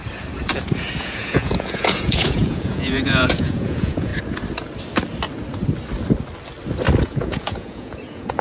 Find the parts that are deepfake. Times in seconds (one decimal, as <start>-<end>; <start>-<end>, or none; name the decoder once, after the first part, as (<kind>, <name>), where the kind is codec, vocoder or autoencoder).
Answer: 1.0-4.1 (vocoder, Vocos); 7.0-8.4